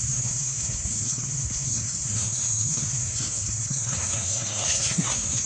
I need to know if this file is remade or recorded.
remade